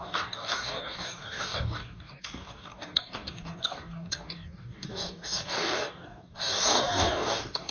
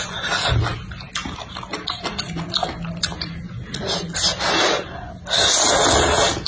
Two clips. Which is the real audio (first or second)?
second